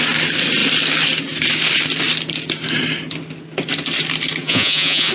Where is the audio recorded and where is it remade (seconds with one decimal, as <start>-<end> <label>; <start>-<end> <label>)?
0.0-4.4 recorded; 4.4-5.1 remade